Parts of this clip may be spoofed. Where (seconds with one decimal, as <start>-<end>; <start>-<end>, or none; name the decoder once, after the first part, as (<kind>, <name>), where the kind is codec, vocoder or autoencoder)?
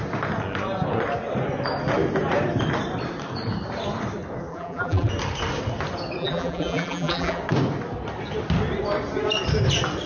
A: 4.5-5.1 (vocoder, BigVGAN v2); 6.2-7.4